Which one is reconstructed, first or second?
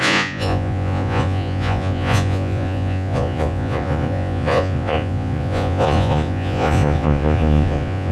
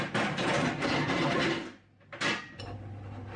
first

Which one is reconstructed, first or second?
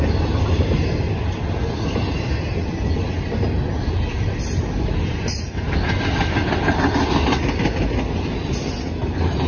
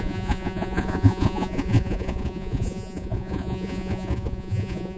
second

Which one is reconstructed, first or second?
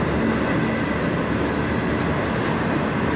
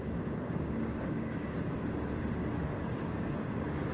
second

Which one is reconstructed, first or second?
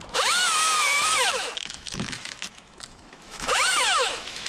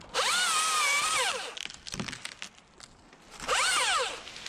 first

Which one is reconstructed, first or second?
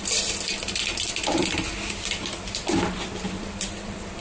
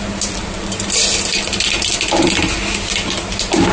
first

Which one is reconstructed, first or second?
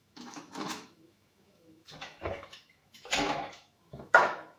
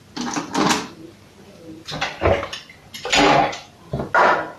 first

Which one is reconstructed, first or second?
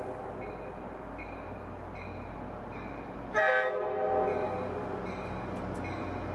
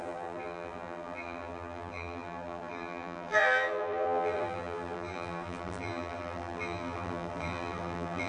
second